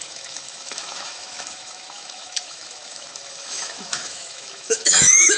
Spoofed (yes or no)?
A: yes